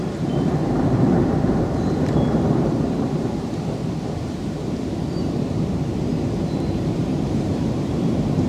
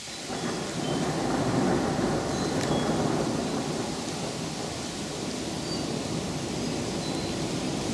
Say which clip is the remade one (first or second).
first